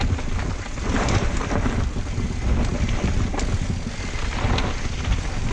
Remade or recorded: recorded